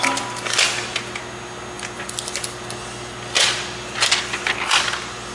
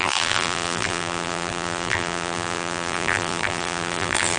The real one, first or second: first